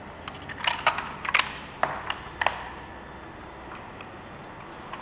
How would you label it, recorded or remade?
recorded